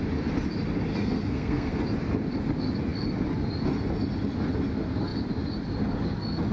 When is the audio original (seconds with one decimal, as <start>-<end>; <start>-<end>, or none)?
0.0-0.9; 1.8-6.5